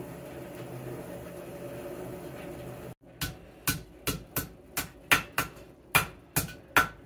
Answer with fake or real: real